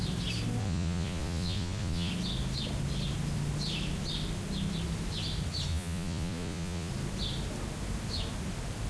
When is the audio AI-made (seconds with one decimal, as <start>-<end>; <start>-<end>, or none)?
0.6-2.1; 5.7-6.9